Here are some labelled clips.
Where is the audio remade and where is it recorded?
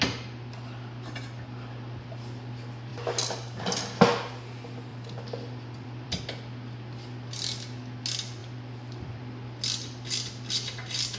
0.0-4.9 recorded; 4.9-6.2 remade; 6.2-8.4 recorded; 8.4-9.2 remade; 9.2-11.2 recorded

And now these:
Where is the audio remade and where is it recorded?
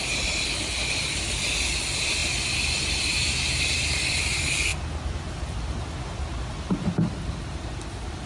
0.0-2.2 remade; 2.2-4.2 recorded; 4.2-4.7 remade; 4.7-7.0 recorded; 7.0-8.3 remade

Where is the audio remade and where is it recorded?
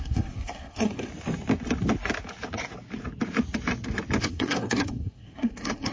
0.0-1.1 remade; 1.1-4.2 recorded; 4.2-5.9 remade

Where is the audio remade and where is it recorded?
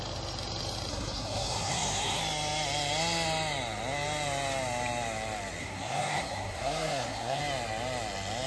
0.0-0.9 recorded; 0.9-2.2 remade; 2.2-5.6 recorded; 5.6-7.4 remade; 7.4-8.5 recorded